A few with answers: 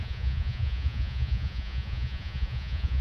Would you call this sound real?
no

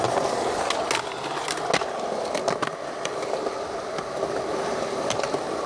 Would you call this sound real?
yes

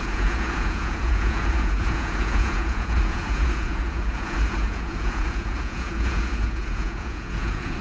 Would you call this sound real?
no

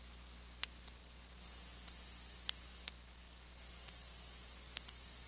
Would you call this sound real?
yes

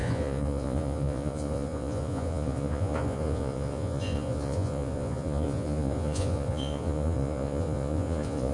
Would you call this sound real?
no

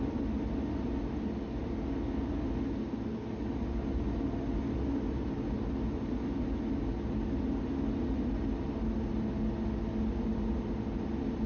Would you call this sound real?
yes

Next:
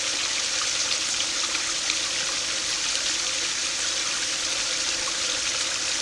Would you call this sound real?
yes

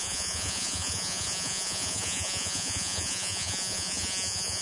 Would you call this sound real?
no